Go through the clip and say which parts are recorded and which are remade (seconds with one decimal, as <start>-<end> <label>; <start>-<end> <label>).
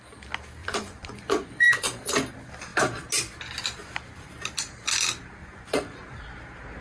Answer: 0.0-0.6 recorded; 0.6-2.0 remade; 2.0-5.4 recorded; 5.4-6.1 remade; 6.1-6.8 recorded